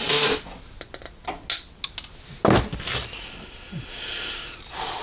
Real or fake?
real